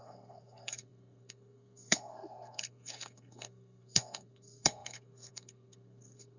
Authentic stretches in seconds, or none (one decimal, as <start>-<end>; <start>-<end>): none